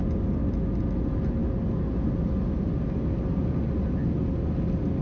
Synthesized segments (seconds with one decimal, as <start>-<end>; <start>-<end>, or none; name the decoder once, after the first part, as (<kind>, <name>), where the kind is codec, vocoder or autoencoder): none